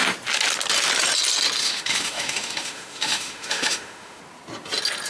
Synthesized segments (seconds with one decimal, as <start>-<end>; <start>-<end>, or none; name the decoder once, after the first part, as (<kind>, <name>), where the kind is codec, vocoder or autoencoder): 1.6-4.2 (autoencoder, DAC-VAE)